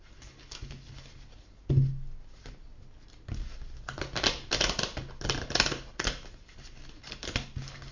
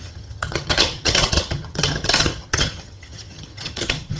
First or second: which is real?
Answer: first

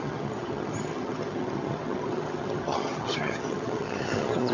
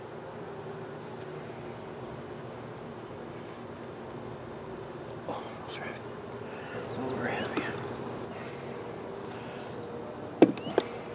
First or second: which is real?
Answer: second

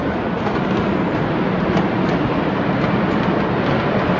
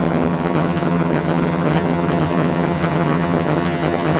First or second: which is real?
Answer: first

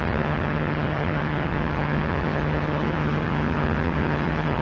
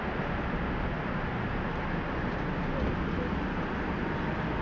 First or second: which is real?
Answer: second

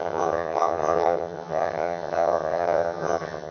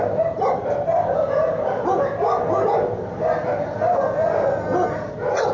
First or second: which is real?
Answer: second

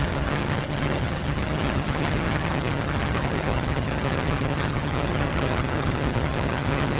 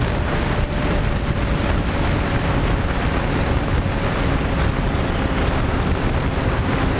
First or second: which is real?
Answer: second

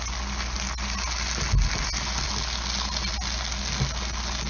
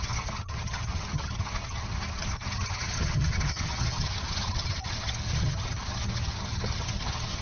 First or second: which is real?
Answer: first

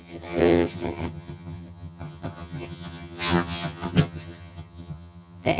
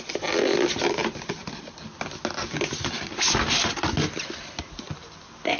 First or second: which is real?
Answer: second